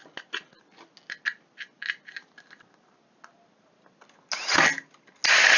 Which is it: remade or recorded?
recorded